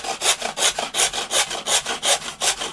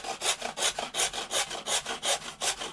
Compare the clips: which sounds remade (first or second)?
first